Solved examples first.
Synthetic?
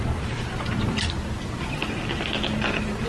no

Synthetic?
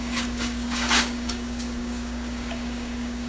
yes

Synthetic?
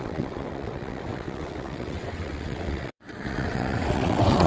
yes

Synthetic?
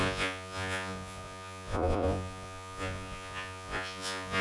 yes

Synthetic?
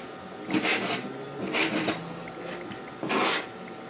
no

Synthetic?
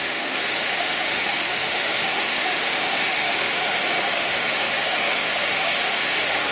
yes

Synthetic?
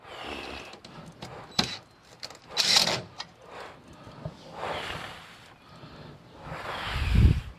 no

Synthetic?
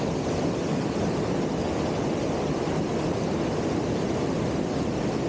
no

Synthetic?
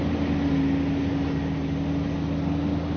no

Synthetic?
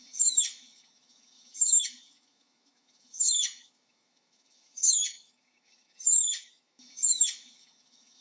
yes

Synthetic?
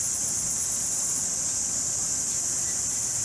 no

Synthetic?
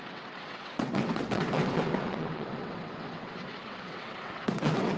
yes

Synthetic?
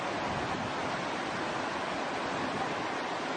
no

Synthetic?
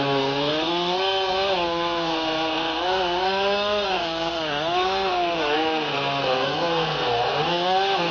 yes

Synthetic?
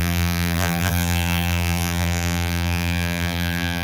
yes